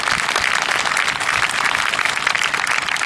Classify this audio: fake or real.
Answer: real